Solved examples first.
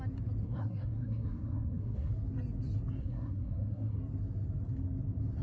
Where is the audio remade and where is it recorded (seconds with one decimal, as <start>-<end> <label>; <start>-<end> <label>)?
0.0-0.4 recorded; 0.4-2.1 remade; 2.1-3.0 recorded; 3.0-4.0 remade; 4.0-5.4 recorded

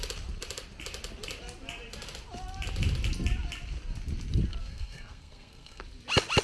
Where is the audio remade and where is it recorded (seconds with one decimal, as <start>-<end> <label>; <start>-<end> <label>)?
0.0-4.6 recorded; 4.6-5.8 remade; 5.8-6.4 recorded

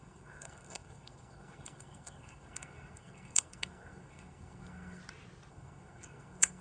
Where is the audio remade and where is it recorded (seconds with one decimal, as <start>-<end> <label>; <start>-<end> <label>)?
0.0-5.0 remade; 5.0-5.5 recorded; 5.5-6.6 remade